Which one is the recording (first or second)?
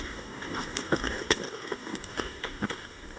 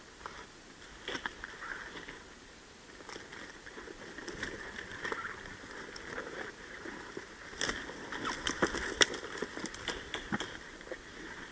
second